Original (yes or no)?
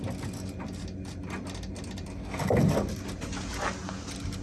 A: yes